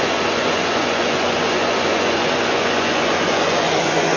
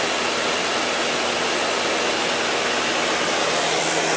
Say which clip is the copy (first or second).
first